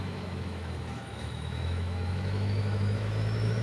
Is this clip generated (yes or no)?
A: yes